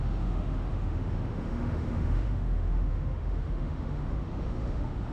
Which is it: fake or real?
fake